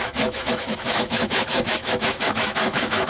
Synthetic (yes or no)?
yes